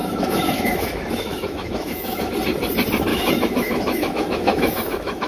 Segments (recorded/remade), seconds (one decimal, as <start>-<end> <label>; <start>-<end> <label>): 0.0-2.3 remade; 2.3-3.1 recorded; 3.1-5.3 remade